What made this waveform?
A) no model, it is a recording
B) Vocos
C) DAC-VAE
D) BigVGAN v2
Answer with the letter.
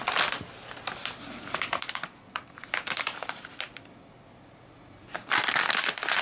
A